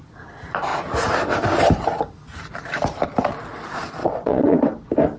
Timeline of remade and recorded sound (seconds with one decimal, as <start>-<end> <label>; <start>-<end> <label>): 0.0-4.0 recorded; 4.0-4.6 remade; 4.6-5.2 recorded

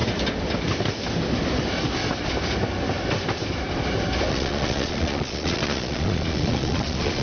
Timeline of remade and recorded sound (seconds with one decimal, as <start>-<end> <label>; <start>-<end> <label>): 0.0-4.3 recorded; 4.3-7.2 remade

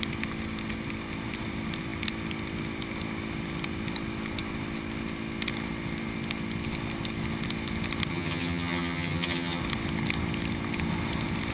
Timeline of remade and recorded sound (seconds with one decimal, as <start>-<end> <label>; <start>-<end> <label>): 0.0-8.1 recorded; 8.1-9.6 remade; 9.6-11.5 recorded

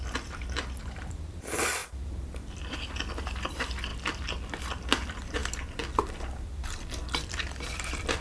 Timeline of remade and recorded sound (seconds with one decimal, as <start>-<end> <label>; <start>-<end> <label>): 0.0-3.9 remade; 3.9-4.6 recorded; 4.6-5.4 remade; 5.4-6.0 recorded; 6.0-8.2 remade